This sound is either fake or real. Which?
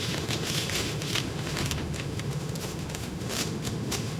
fake